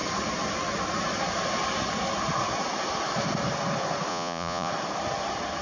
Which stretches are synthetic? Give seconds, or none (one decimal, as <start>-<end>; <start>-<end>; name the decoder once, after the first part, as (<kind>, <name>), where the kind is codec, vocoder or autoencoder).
4.1-4.7 (vocoder, Vocos)